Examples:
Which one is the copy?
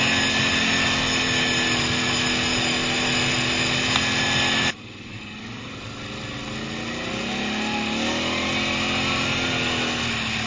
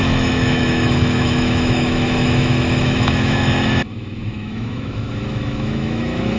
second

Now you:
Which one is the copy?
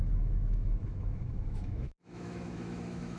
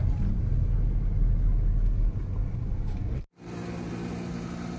first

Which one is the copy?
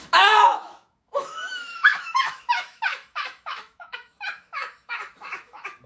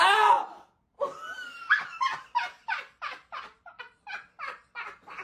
first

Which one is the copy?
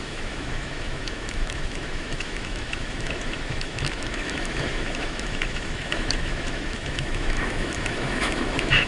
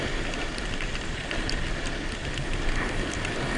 first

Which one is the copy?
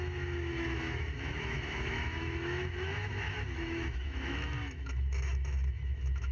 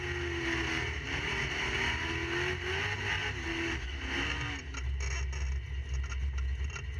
first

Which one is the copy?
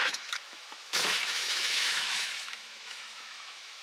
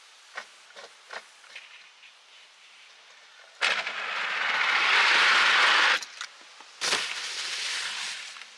first